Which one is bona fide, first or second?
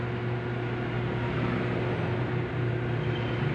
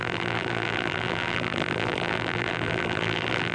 first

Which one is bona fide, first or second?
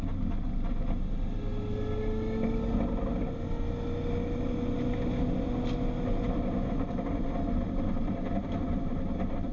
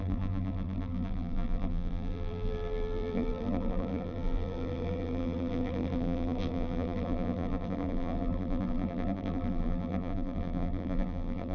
first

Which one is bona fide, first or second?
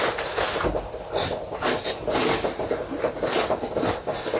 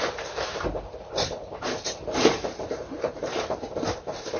first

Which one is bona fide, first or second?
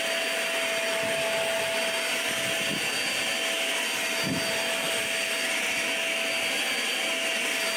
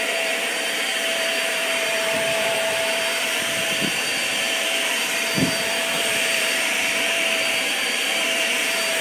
first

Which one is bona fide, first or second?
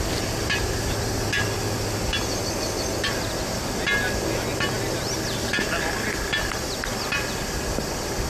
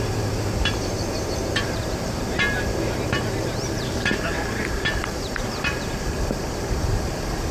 first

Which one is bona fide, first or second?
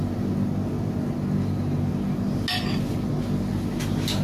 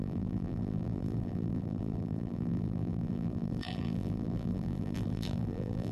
first